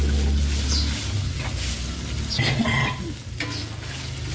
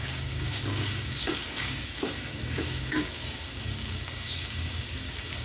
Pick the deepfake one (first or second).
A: second